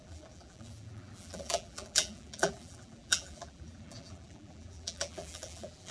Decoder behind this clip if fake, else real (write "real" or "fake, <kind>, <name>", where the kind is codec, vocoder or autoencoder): fake, vocoder, BigVGAN v2